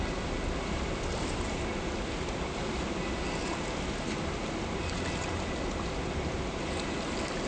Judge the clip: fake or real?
real